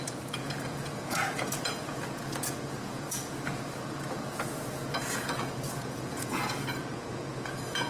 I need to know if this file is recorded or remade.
remade